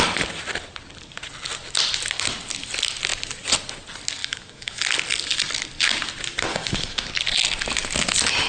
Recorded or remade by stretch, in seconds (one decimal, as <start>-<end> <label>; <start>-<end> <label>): 0.0-4.2 recorded; 4.2-4.8 remade; 4.8-6.5 recorded; 6.5-7.1 remade; 7.1-8.5 recorded